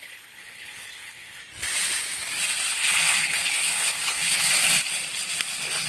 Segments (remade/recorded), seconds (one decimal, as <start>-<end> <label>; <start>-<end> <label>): 0.0-1.4 remade; 1.4-2.7 recorded; 2.7-4.5 remade; 4.5-5.9 recorded